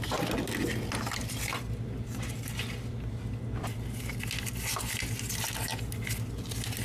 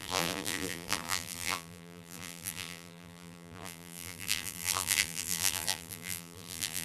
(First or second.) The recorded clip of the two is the first